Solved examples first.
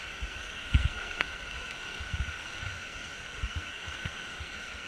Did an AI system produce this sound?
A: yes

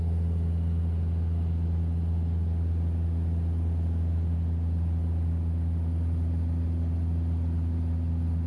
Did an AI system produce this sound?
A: no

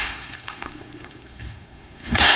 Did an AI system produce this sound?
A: yes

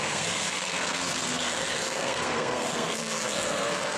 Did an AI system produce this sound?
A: yes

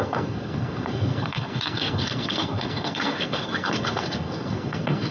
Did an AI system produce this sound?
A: yes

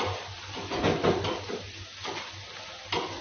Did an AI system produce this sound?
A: no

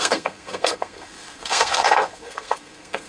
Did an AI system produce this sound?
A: yes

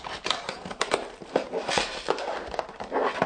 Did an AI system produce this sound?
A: no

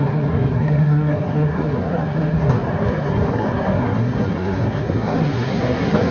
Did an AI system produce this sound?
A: yes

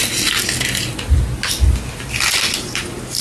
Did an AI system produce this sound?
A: no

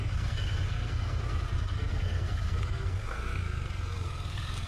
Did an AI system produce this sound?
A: yes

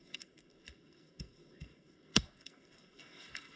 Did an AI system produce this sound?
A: yes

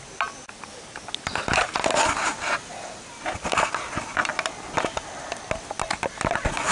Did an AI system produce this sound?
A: no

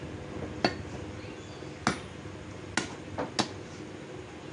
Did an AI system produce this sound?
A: no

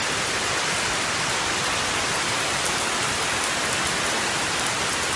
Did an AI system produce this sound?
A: no